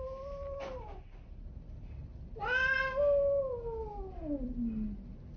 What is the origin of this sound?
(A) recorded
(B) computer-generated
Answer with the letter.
A